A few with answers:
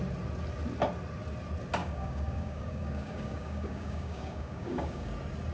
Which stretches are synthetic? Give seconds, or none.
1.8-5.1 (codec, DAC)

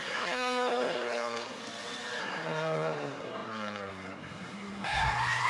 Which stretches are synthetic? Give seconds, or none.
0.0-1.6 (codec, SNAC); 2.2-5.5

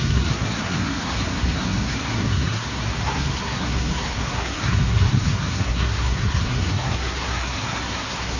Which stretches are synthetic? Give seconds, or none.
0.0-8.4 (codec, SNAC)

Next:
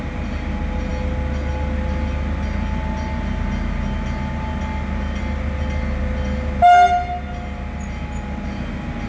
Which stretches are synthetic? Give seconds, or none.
none

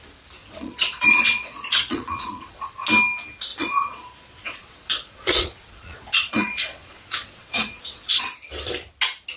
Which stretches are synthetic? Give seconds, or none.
0.4-2.7 (vocoder, Vocos); 3.5-8.2

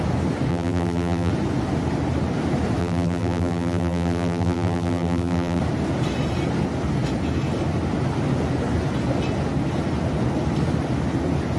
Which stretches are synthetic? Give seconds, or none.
0.5-1.3 (vocoder, BigVGAN v2); 2.8-5.6